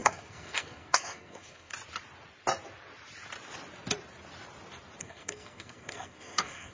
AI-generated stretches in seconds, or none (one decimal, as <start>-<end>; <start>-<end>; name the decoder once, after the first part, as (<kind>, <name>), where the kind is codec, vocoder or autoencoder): 0.0-1.7 (codec, SNAC); 5.0-6.7